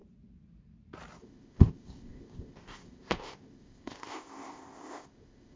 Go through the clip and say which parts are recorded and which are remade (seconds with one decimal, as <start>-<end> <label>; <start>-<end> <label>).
0.0-1.2 recorded; 1.2-5.6 remade